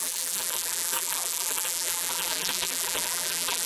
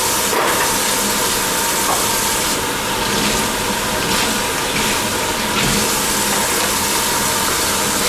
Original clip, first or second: second